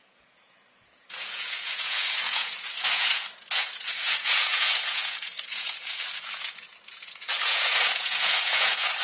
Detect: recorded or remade remade